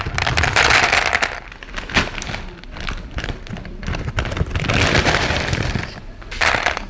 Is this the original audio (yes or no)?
yes